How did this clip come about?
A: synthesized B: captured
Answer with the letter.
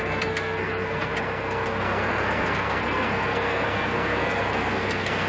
A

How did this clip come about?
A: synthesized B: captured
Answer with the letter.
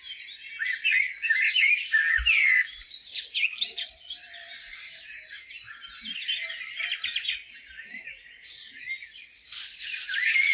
B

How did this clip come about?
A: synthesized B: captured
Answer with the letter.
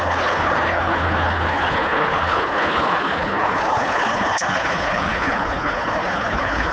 A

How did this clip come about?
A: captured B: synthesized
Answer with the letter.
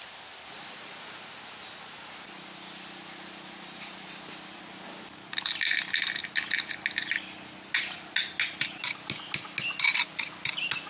A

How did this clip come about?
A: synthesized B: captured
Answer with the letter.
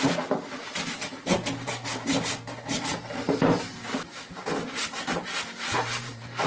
A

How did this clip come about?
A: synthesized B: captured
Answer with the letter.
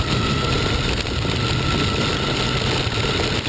B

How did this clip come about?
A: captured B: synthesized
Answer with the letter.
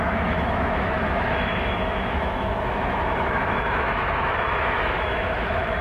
B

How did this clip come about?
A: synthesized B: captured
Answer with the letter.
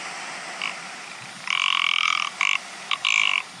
B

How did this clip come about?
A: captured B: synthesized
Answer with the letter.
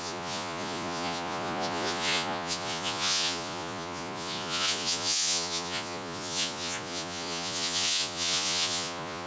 B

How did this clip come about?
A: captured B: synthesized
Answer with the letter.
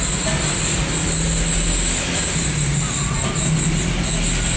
A